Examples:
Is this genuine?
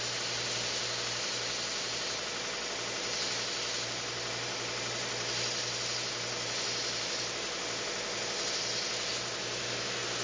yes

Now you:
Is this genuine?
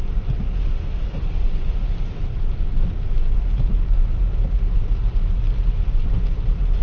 yes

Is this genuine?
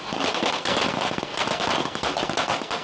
no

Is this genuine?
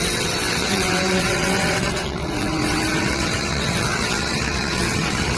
no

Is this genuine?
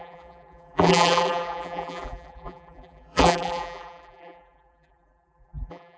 no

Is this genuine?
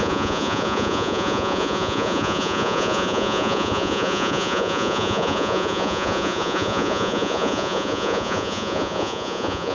no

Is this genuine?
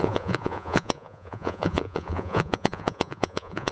no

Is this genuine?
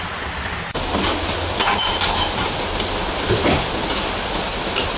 yes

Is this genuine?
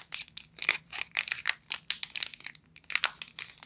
yes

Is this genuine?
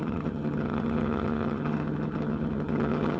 no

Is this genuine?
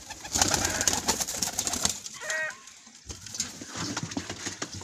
yes